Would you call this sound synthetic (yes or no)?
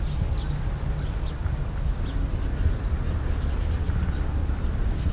no